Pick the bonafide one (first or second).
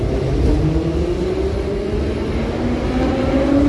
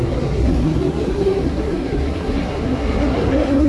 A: first